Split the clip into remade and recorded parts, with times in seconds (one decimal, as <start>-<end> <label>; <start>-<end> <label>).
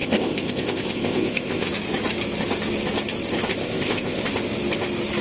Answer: 0.0-1.7 remade; 1.7-3.5 recorded; 3.5-4.2 remade; 4.2-5.2 recorded